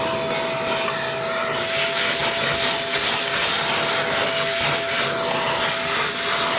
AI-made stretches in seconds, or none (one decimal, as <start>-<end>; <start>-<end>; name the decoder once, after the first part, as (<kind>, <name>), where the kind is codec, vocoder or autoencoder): none